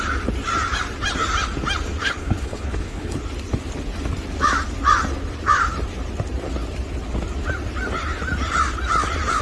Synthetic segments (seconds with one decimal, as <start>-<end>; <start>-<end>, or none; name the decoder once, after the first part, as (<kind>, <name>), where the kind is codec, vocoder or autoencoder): 2.0-3.2 (codec, HILCodec)